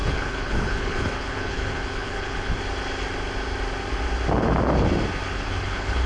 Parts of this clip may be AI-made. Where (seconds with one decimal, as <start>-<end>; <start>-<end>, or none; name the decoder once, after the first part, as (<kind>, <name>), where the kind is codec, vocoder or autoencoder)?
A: 0.0-2.6 (codec, HILCodec); 5.3-6.1